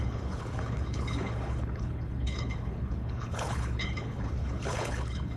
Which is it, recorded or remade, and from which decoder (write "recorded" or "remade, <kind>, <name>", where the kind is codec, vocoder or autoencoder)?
remade, codec, HILCodec